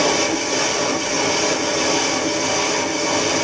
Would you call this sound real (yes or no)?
yes